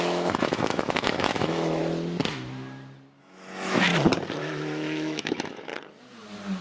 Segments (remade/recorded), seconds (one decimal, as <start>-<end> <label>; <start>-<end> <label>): 0.0-1.8 remade; 1.8-3.2 recorded; 3.2-3.9 remade; 3.9-4.4 recorded; 4.4-5.7 remade; 5.7-6.6 recorded